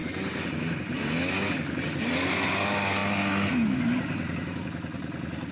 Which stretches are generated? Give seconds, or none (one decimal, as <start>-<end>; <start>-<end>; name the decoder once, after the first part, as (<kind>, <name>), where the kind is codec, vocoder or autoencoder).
none